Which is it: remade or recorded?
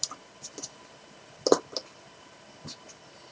recorded